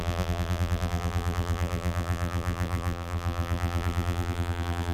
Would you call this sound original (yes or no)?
no